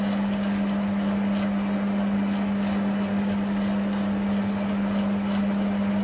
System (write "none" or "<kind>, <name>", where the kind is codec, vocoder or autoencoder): none